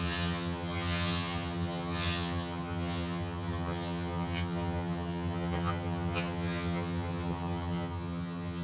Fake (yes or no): yes